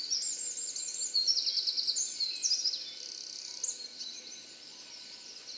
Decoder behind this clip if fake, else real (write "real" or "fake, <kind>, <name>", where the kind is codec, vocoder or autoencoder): real